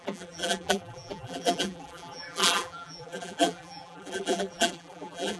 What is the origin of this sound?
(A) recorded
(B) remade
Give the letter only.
B